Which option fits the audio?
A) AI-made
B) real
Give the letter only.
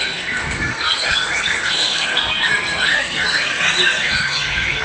A